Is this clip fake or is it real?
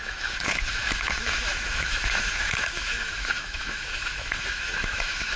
fake